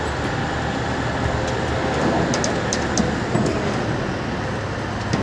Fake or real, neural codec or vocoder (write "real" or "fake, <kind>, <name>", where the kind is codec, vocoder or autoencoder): real